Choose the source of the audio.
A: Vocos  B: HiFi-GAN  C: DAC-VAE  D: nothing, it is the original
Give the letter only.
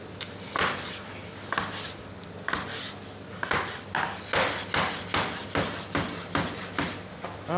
D